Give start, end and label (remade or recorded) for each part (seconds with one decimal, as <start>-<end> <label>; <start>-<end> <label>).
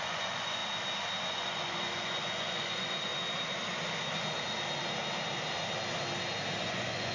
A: 0.0-0.6 remade; 0.6-1.3 recorded; 1.3-3.1 remade; 3.1-6.6 recorded; 6.6-7.1 remade